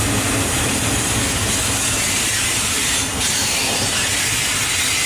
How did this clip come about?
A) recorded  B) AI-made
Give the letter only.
A